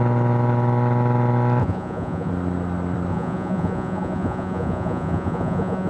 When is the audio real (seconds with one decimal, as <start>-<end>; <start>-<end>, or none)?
0.0-1.6; 2.3-3.1